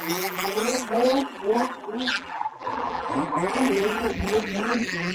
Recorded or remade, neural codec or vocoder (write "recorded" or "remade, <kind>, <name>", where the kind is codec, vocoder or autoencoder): remade, vocoder, BigVGAN v2